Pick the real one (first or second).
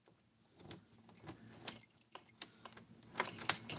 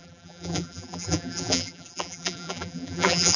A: first